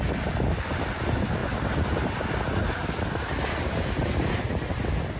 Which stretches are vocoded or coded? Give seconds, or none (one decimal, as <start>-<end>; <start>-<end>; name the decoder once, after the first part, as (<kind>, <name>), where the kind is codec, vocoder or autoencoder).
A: none